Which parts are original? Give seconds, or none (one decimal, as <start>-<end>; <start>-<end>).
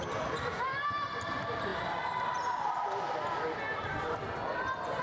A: 0.0-3.7